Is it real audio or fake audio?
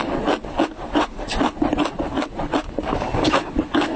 real